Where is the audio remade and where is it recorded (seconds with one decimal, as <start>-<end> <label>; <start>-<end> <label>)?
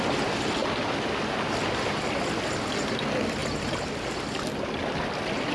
0.0-5.5 recorded